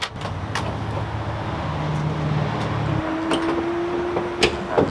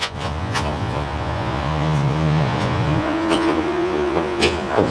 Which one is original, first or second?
first